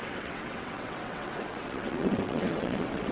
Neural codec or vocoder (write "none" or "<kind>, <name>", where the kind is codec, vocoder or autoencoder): vocoder, WaveNeXt